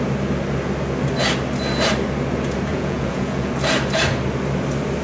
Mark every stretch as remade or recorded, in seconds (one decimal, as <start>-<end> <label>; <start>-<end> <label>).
0.0-2.7 recorded; 2.7-3.5 remade; 3.5-5.0 recorded